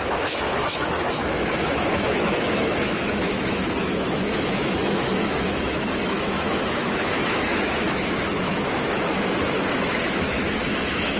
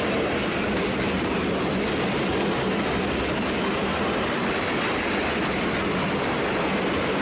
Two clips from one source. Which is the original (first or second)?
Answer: second